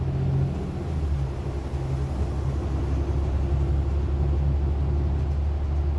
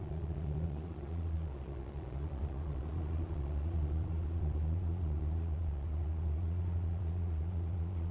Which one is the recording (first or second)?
first